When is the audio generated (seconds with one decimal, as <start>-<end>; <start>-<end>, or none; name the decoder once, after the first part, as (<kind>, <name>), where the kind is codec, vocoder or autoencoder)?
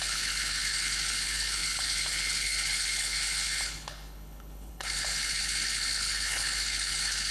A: 0.0-7.3 (codec, HILCodec)